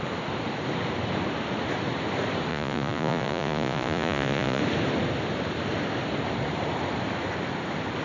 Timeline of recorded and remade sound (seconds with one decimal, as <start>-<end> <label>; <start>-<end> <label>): 0.0-2.5 recorded; 2.5-4.6 remade; 4.6-8.0 recorded